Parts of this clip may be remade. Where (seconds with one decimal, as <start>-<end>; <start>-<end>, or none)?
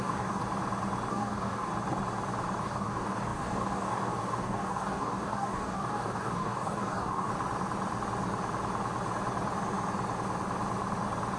0.0-0.4; 1.1-1.7; 2.6-7.3